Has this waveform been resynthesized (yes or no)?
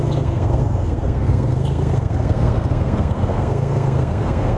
yes